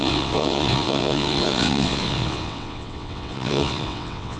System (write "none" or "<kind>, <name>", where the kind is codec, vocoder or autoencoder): vocoder, WaveNeXt